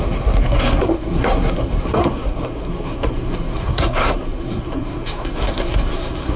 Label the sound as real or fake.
fake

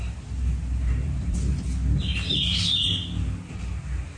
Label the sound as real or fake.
real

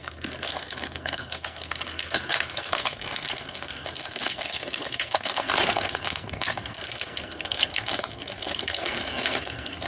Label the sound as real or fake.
fake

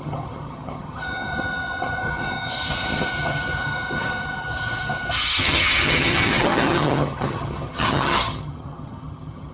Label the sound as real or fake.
fake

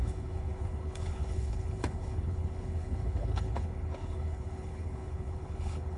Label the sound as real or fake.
fake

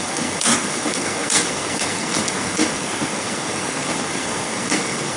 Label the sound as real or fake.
fake